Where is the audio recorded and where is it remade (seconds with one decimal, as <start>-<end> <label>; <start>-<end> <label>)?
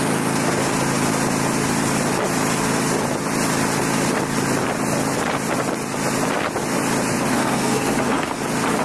0.0-7.3 recorded; 7.3-8.4 remade; 8.4-8.8 recorded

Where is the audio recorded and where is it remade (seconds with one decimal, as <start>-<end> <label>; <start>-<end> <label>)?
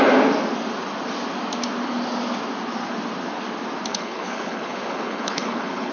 0.0-3.9 recorded; 3.9-5.9 remade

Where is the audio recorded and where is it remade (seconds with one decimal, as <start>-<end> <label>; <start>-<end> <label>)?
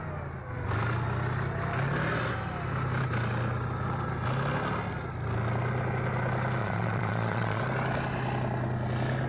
0.0-6.6 recorded; 6.6-7.6 remade; 7.6-9.3 recorded